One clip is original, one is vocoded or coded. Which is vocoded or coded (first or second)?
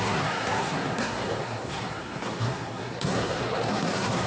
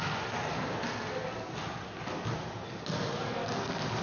first